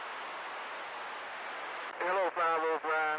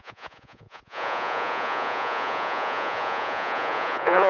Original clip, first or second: first